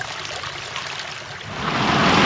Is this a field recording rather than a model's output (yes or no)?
yes